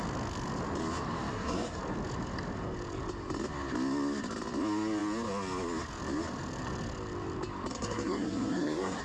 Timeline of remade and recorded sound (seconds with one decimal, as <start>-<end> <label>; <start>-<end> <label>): 0.0-1.3 recorded; 1.3-1.8 remade; 1.8-7.7 recorded; 7.7-9.0 remade